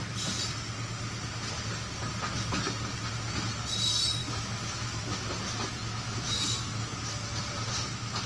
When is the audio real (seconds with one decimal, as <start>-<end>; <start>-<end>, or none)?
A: 0.0-4.2; 5.3-5.7; 7.4-8.3